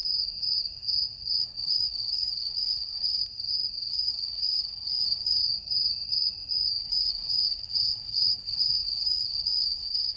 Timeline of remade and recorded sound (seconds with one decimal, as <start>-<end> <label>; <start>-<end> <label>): 0.0-1.4 recorded; 1.4-3.2 remade; 3.2-3.9 recorded; 3.9-5.4 remade; 5.4-6.8 recorded; 6.8-10.2 remade